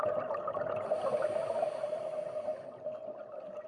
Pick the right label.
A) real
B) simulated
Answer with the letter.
A